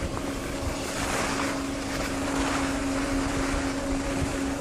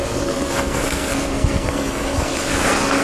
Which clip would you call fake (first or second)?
second